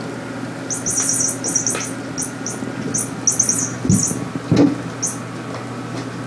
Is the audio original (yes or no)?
yes